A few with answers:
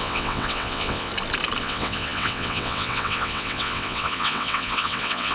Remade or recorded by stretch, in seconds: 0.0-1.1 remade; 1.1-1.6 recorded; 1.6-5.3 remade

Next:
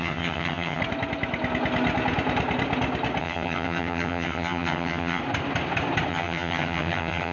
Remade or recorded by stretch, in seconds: 0.0-0.8 remade; 0.8-3.2 recorded; 3.2-5.2 remade; 5.2-6.1 recorded; 6.1-7.3 remade

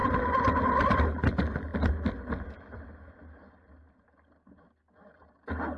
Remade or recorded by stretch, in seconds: 0.0-5.8 recorded

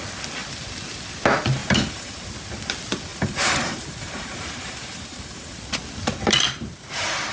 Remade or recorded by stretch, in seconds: 0.0-1.6 recorded; 1.6-2.3 remade; 2.3-3.1 recorded; 3.1-5.6 remade; 5.6-7.3 recorded

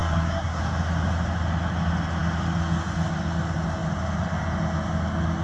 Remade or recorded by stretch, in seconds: 0.0-0.6 remade; 0.6-5.4 recorded